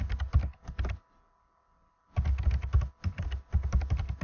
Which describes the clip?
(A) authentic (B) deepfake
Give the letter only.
A